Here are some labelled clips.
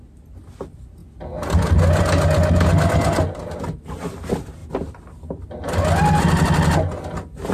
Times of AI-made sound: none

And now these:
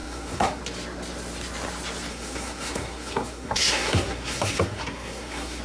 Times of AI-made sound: 0.0-0.6 (codec, SNAC); 2.1-5.6

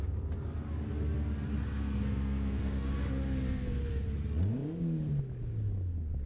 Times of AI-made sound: 1.6-2.9 (codec, SNAC)

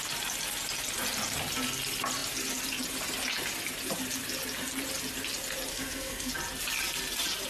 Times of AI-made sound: 5.7-6.3 (codec, SNAC)

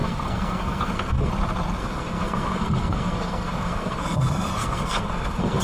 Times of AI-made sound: 0.0-1.3 (codec, SNAC); 1.8-5.6

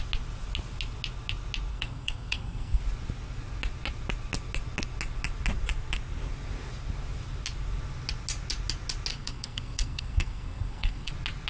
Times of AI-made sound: 1.7-2.8 (codec, SNAC); 9.1-11.1

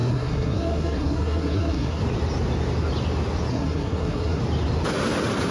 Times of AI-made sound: 0.0-2.0 (codec, SNAC); 3.5-4.4